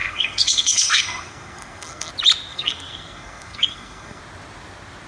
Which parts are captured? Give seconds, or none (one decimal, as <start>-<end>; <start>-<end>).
2.1-2.5; 4.2-5.1